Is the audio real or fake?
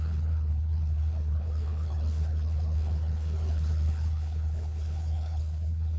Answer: fake